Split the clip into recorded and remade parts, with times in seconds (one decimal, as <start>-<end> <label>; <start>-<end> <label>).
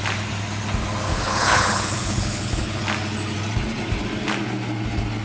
0.0-1.1 recorded; 1.1-2.8 remade; 2.8-5.2 recorded